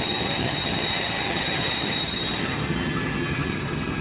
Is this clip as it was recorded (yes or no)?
no